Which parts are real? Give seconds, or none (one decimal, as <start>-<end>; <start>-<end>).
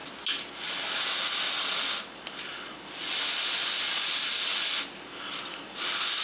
0.0-6.2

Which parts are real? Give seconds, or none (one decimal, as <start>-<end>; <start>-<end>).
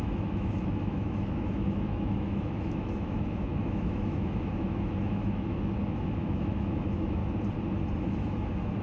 7.2-8.0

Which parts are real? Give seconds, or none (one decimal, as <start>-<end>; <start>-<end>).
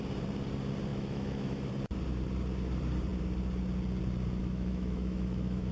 0.0-0.9; 1.7-4.4